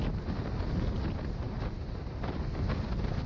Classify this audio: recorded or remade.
recorded